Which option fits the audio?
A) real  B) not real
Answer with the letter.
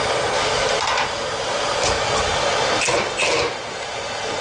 A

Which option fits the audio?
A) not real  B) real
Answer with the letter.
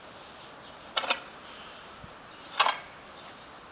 B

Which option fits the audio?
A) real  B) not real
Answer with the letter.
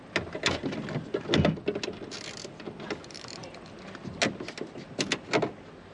A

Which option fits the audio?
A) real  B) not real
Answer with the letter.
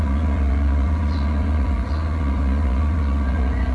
B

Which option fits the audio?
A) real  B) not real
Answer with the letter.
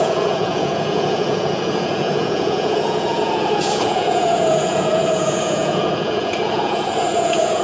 B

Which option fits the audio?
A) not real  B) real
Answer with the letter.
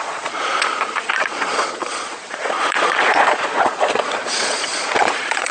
A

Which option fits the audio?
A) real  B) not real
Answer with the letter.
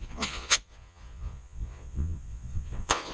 B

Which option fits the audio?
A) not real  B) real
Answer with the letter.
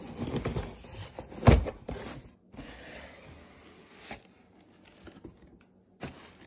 B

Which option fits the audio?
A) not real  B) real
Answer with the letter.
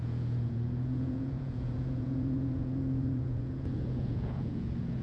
A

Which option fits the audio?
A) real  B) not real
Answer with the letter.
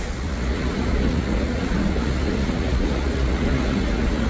B